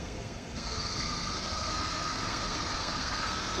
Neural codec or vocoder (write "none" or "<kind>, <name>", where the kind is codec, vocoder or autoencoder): codec, SNAC